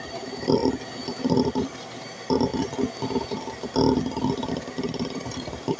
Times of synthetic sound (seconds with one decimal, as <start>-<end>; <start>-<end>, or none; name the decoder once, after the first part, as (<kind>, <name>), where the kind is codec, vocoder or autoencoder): 0.0-0.6 (vocoder, BigVGAN v2); 1.4-2.5; 4.5-5.8